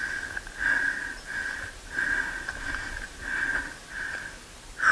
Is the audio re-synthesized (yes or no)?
no